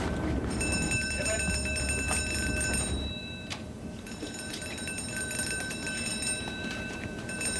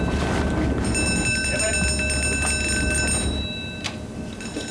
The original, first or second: second